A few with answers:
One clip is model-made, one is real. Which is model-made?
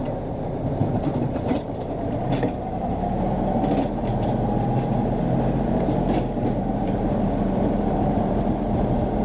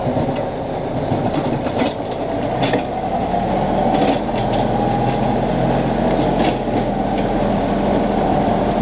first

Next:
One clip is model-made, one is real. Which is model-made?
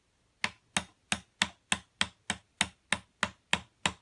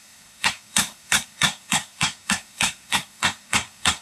second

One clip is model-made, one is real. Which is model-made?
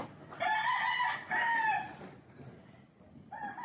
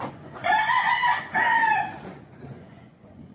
second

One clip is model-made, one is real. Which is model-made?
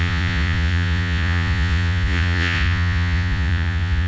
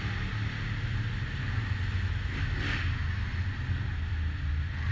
first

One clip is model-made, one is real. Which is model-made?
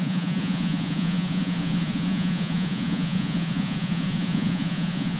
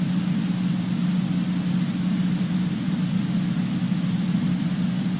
first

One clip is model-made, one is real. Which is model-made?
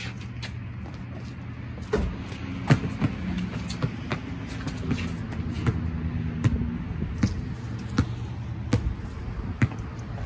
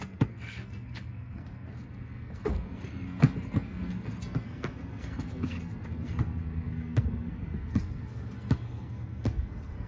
second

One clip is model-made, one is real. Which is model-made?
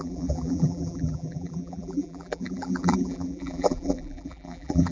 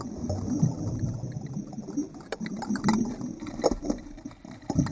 first